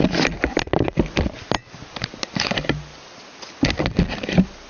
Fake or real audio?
real